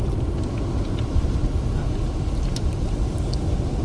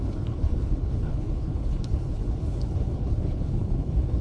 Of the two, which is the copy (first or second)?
second